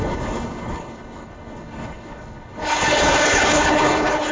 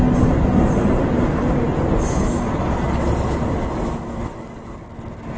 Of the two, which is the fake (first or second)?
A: first